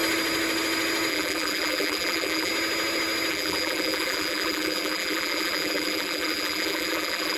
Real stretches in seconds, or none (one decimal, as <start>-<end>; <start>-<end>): 0.0-1.1; 2.5-3.3